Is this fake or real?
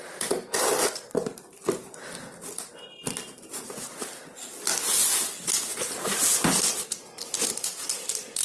real